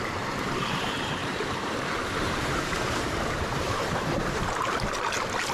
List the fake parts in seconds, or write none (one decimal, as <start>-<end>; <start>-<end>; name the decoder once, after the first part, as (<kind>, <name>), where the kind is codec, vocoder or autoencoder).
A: 1.2-4.5 (vocoder, BigVGAN v2)